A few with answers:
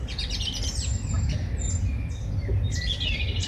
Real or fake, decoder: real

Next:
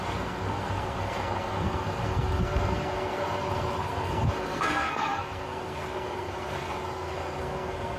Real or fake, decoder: fake, codec, SNAC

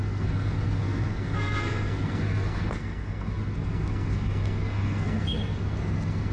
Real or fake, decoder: fake, codec, SNAC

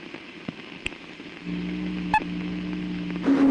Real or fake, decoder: real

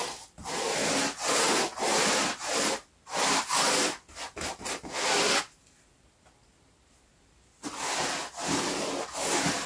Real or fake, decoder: real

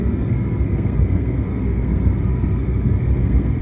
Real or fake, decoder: fake, codec, SNAC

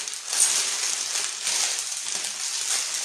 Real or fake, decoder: real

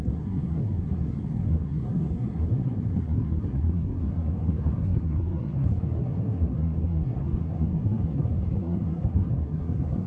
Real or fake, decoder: fake, codec, SNAC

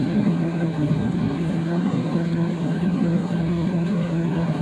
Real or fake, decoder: fake, codec, SNAC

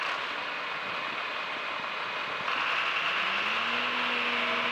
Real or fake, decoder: real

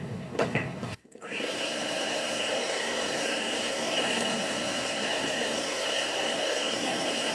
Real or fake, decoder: fake, codec, SNAC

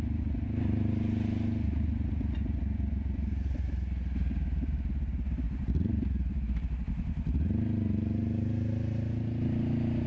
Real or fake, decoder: real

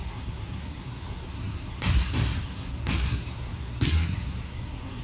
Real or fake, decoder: fake, codec, SNAC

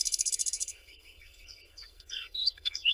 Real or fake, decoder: fake, codec, SNAC